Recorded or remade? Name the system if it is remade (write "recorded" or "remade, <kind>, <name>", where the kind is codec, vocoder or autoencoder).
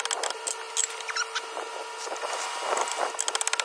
recorded